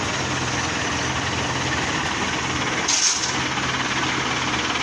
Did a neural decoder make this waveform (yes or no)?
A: no